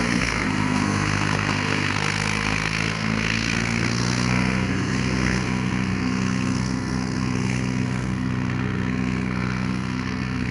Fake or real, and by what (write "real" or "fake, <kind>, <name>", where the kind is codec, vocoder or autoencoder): fake, codec, SNAC